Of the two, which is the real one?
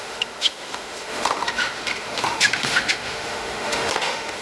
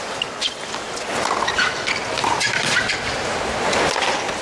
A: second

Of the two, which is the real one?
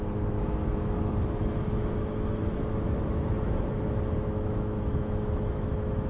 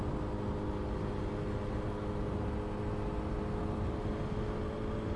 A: second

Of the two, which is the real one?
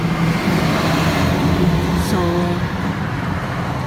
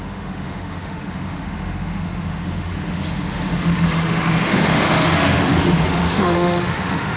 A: first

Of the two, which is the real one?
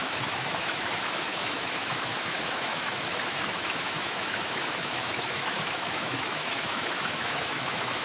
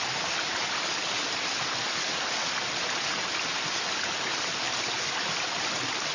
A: second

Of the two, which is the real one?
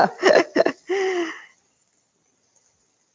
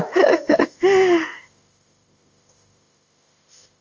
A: first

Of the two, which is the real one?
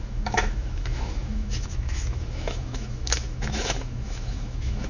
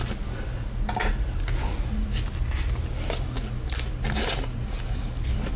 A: second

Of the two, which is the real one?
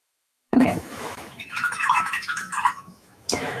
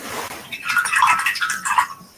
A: second